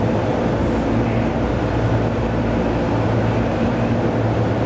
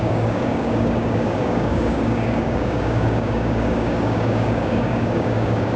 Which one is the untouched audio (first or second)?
first